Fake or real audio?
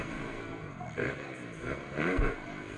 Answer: fake